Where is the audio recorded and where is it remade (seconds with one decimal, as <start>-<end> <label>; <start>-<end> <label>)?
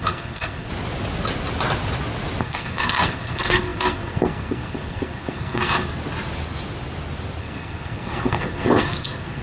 0.0-0.7 remade; 0.7-2.4 recorded; 2.4-6.0 remade; 6.0-7.4 recorded; 7.4-9.4 remade